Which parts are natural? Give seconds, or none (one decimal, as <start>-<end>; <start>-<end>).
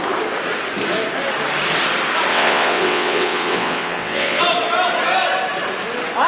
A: 0.0-2.3; 4.4-6.3